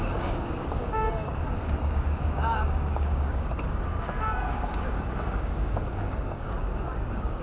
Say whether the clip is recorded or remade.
remade